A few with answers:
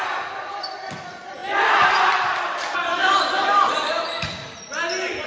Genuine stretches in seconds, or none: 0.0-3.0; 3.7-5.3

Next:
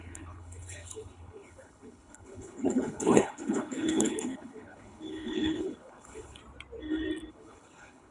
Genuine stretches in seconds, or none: 6.4-7.3

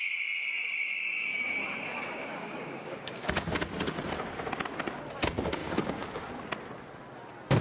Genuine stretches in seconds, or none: 0.0-1.9; 3.6-5.6; 6.3-7.6

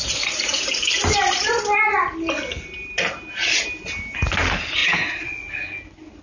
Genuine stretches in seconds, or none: 0.0-4.8; 5.6-6.2

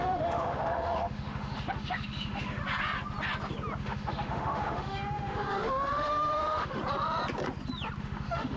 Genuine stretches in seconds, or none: 2.6-3.8; 6.8-8.0

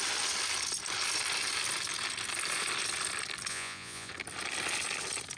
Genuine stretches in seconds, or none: 0.0-3.5; 4.1-5.4